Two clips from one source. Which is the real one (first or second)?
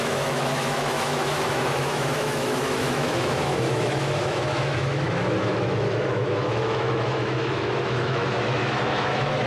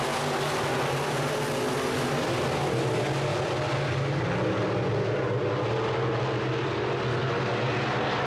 second